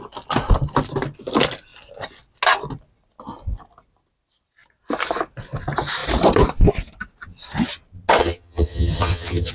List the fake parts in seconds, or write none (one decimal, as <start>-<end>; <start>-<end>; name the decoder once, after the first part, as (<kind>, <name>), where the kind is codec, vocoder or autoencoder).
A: 8.2-9.5 (vocoder, HiFi-GAN)